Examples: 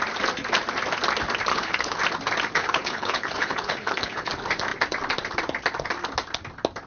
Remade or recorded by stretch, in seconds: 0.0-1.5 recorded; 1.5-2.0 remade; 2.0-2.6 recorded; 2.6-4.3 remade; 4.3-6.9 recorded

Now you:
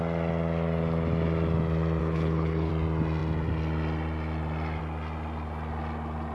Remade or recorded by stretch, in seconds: 0.0-2.0 recorded; 2.0-2.7 remade; 2.7-6.3 recorded

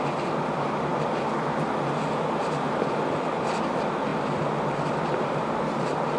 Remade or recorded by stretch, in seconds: 0.0-6.2 recorded

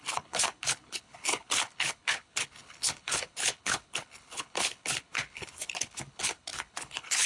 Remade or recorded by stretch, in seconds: 0.0-7.3 remade

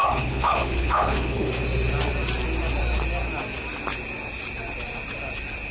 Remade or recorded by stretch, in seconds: 0.0-1.5 remade; 1.5-5.7 recorded